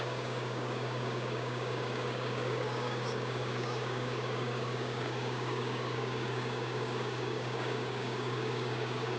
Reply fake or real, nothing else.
fake